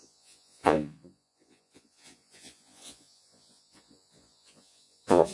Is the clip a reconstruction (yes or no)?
yes